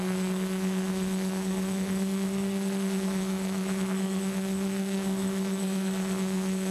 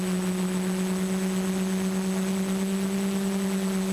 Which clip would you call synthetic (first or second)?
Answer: first